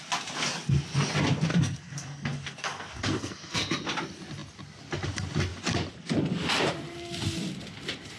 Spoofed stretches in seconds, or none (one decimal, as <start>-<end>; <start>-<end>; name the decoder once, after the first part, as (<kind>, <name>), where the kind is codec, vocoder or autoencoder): 1.5-3.7 (codec, SNAC)